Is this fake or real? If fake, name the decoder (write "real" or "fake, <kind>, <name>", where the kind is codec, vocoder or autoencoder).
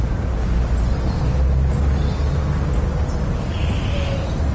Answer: real